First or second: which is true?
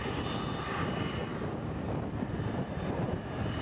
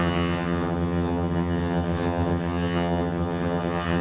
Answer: first